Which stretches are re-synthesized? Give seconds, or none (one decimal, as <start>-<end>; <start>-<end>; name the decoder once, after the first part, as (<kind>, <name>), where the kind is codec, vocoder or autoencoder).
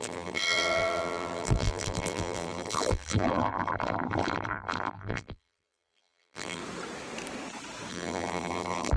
0.0-6.6 (vocoder, BigVGAN v2); 7.9-9.0